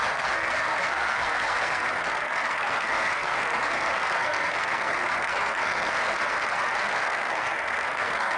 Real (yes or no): no